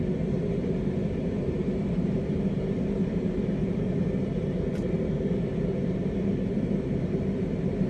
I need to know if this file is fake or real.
fake